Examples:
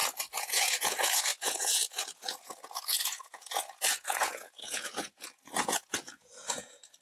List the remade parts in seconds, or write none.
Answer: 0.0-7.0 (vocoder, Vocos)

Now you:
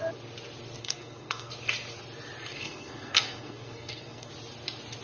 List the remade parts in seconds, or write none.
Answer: 0.8-1.5 (codec, SNAC); 2.5-4.3

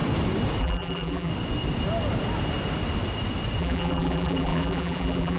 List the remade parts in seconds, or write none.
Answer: 0.6-1.3 (vocoder, BigVGAN v2); 3.6-5.4

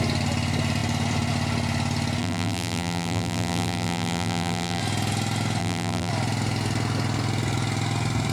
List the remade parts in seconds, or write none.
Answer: 2.2-4.8 (vocoder, BigVGAN v2); 5.6-6.1

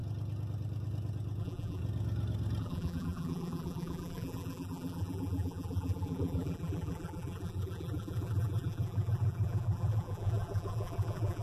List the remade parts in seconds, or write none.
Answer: 1.4-1.8 (vocoder, BigVGAN v2); 2.6-11.4

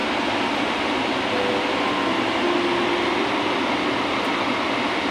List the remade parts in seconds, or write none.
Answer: 0.0-0.7 (vocoder, BigVGAN v2)

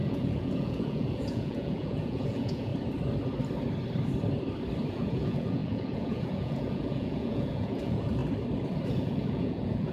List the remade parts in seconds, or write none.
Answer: 0.0-2.7 (vocoder, Vocos); 4.9-8.2; 8.9-9.9